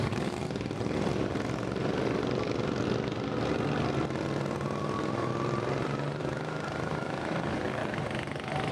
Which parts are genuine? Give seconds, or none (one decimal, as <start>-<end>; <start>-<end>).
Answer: 0.4-4.8; 5.3-6.2; 7.8-8.7